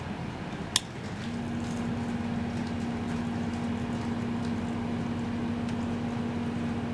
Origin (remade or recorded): recorded